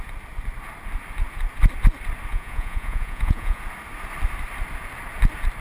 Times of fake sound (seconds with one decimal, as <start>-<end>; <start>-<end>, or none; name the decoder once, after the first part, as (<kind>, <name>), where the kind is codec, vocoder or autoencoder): 2.3-3.6 (vocoder, Vocos)